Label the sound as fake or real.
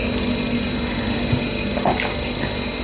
real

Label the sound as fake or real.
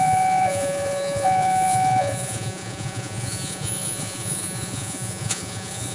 fake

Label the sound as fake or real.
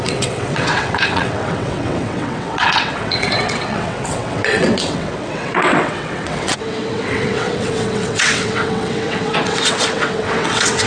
fake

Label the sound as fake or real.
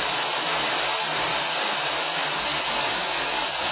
real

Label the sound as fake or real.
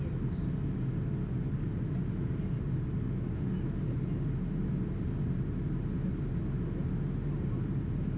real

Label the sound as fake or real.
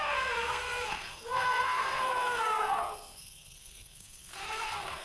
fake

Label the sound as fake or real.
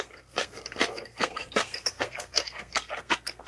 fake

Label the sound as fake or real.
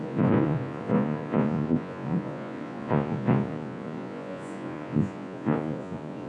fake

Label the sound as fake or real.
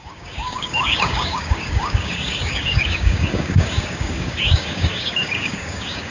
fake